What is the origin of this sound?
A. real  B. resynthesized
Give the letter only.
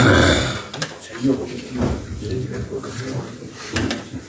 A